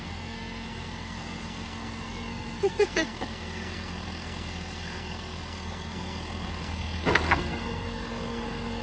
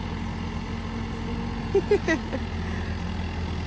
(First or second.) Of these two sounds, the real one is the second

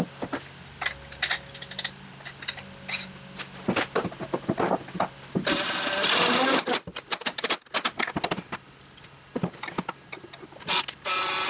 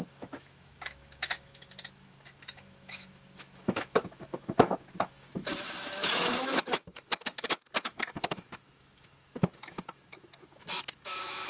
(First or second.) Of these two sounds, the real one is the first